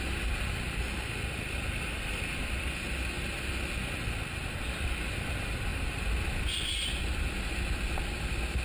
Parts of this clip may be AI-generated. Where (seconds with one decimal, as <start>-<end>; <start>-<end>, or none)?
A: none